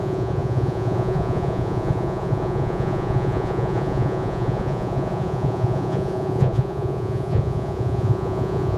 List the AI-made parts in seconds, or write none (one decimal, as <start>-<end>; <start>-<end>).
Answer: 0.0-8.8